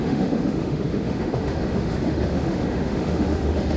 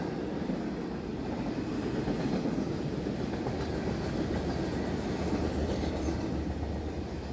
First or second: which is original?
second